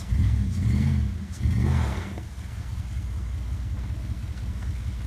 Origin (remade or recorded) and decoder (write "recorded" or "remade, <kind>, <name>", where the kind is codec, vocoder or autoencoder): remade, codec, SNAC